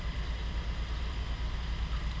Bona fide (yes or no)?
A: yes